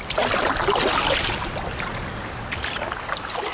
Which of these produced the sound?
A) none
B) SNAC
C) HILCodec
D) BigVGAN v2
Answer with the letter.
A